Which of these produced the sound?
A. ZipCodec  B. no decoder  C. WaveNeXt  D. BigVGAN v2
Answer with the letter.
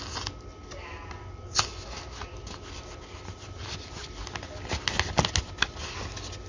B